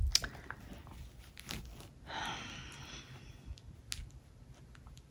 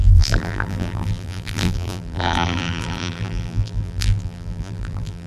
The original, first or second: first